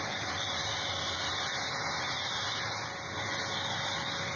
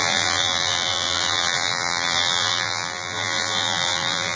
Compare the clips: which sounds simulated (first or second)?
second